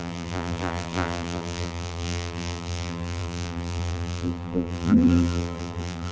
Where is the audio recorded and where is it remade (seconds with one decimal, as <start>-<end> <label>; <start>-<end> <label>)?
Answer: 0.0-6.1 remade